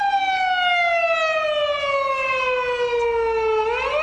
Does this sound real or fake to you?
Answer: real